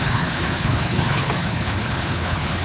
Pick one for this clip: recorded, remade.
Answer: remade